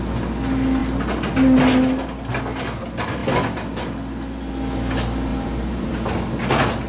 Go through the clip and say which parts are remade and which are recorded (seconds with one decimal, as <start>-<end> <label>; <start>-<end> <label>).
0.0-5.3 recorded; 5.3-5.9 remade; 5.9-6.9 recorded